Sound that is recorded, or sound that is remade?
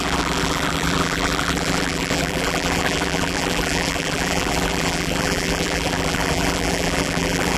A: remade